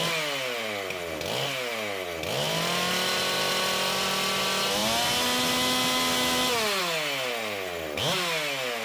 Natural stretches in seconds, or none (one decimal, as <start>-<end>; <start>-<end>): 0.0-8.8